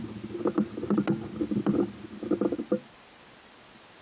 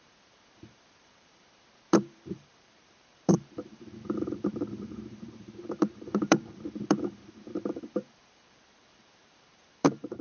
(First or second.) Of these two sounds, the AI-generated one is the second